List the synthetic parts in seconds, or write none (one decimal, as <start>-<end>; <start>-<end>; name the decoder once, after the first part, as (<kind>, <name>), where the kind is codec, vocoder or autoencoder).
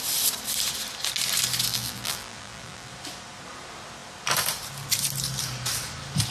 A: 1.7-2.9 (vocoder, BigVGAN v2)